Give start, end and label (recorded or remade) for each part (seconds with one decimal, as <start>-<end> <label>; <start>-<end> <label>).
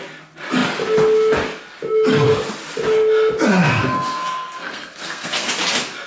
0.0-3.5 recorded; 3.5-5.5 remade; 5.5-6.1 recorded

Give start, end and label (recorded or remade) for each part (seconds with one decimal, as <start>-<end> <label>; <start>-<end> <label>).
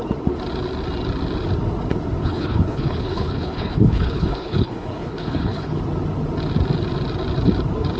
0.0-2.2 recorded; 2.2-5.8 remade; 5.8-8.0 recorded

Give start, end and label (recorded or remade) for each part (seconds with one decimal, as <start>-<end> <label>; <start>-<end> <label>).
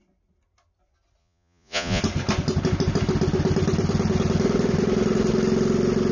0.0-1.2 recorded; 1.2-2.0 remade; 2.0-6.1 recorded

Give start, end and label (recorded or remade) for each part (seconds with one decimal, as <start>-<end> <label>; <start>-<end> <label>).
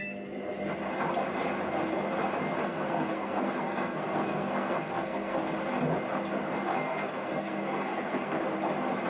0.0-2.6 recorded; 2.6-5.4 remade; 5.4-6.7 recorded; 6.7-8.4 remade; 8.4-9.1 recorded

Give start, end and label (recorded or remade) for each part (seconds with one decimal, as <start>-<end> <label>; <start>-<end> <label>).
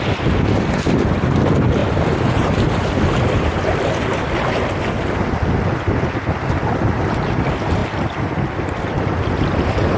0.0-1.8 recorded; 1.8-5.1 remade; 5.1-7.8 recorded; 7.8-9.4 remade; 9.4-10.0 recorded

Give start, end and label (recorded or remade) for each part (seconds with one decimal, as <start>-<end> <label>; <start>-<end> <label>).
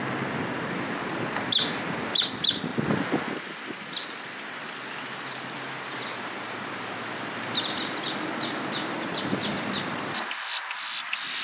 0.0-11.4 recorded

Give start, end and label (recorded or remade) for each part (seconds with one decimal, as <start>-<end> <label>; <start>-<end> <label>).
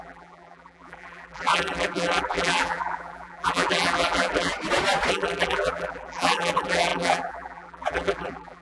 0.0-4.5 remade; 4.5-5.1 recorded; 5.1-8.6 remade